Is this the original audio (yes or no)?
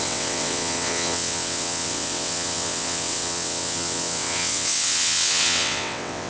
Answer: no